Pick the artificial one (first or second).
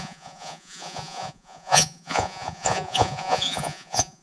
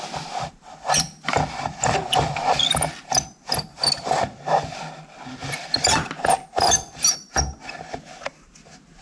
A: first